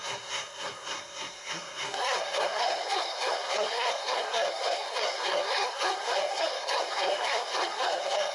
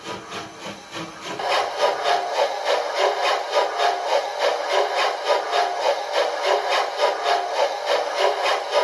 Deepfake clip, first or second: first